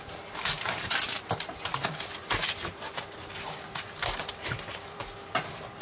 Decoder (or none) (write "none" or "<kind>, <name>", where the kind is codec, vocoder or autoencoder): vocoder, BigVGAN v2